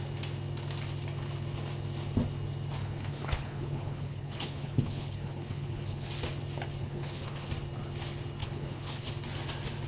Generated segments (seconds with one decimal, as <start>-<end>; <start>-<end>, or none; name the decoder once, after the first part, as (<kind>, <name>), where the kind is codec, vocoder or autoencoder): 2.8-6.1 (codec, HILCodec); 6.8-7.5; 8.4-9.1